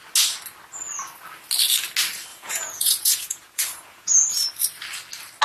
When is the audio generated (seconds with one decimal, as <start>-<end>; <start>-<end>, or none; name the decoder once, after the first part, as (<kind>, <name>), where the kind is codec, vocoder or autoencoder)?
2.3-4.5 (vocoder, Vocos)